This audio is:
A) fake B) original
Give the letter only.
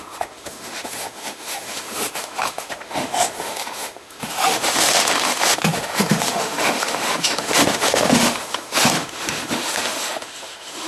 A